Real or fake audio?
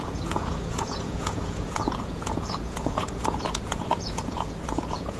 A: fake